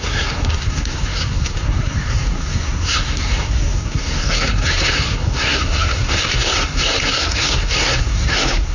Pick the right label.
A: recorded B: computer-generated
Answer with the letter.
B